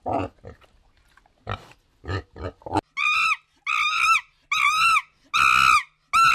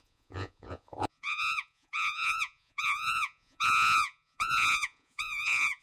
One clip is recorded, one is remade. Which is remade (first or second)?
second